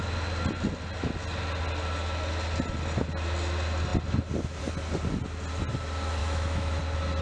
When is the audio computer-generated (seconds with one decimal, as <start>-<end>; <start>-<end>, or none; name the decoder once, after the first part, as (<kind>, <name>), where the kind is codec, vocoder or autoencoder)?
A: 6.2-6.8 (autoencoder, DAC-VAE)